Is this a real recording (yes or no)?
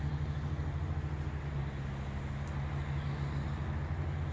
yes